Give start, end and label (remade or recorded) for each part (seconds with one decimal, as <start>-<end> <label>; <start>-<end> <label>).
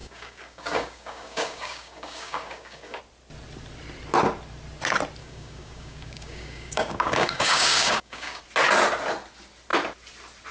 0.0-3.0 remade; 3.0-5.2 recorded; 5.2-8.4 remade; 8.4-10.5 recorded